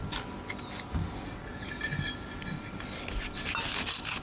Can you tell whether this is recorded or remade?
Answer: recorded